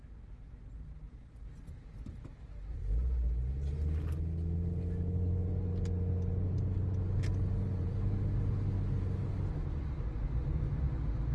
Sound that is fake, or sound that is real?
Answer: real